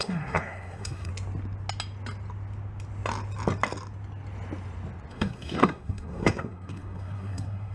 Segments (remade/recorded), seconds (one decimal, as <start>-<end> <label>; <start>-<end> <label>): 0.0-1.1 remade; 1.1-5.1 recorded; 5.1-7.7 remade